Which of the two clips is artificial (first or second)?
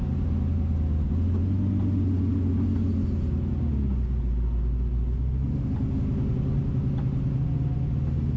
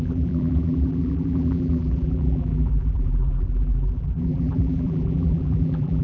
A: second